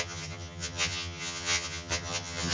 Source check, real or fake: fake